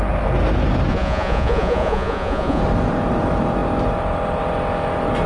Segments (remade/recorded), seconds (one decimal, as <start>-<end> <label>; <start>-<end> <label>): 0.0-0.9 recorded; 0.9-2.6 remade; 2.6-5.3 recorded